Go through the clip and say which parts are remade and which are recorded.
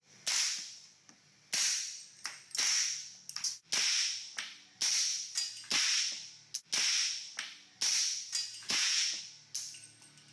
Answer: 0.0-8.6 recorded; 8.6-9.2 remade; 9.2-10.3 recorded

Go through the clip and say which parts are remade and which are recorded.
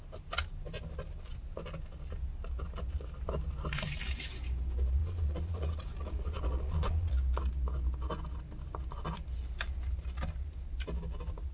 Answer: 0.0-5.0 recorded; 5.0-7.1 remade; 7.1-11.5 recorded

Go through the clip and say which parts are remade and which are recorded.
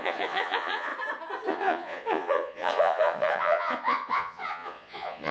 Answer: 0.0-0.9 remade; 0.9-1.5 recorded; 1.5-5.3 remade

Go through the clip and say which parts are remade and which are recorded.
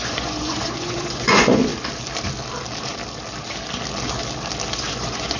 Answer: 0.0-1.7 remade; 1.7-4.9 recorded; 4.9-5.4 remade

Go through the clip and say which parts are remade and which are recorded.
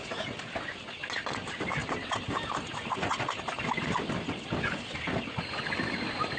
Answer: 0.0-6.4 recorded